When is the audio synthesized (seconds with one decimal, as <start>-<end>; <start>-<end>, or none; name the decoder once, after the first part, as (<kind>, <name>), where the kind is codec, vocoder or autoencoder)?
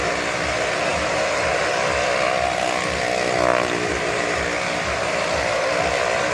0.9-1.7 (vocoder, BigVGAN v2)